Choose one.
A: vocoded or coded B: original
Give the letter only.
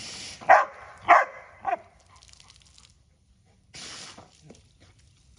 A